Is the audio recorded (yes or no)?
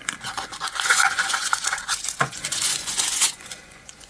no